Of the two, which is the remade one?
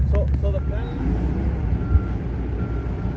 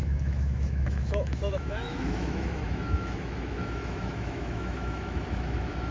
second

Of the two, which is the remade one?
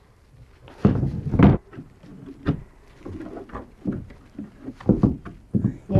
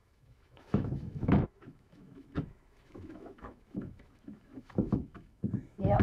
second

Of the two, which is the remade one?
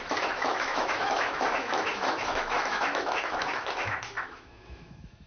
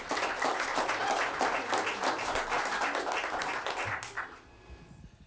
first